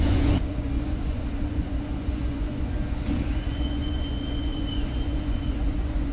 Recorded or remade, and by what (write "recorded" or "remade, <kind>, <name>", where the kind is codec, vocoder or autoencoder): remade, vocoder, Vocos